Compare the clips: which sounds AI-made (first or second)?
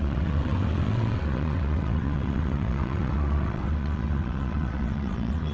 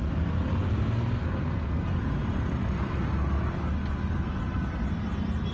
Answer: first